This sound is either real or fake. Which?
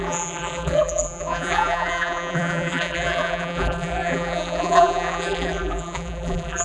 fake